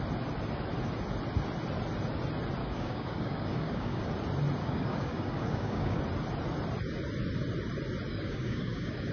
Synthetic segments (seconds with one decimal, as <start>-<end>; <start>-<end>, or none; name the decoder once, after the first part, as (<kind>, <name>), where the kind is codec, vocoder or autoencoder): 2.6-4.1 (codec, DAC); 4.6-6.0; 8.1-9.1